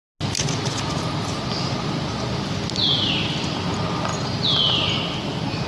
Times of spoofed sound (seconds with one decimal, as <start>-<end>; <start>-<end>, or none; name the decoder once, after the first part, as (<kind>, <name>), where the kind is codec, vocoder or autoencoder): 4.1-5.0 (vocoder, BigVGAN v2)